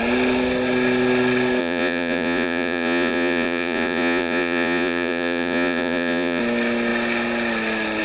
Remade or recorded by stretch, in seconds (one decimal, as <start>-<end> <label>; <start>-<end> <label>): 0.0-1.6 recorded; 1.6-6.4 remade; 6.4-8.0 recorded